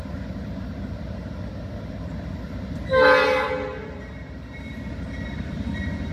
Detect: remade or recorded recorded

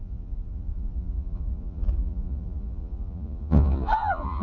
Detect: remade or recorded remade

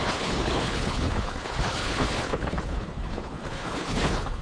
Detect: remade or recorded remade